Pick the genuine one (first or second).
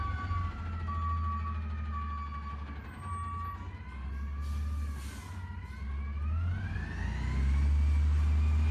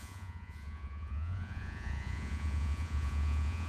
first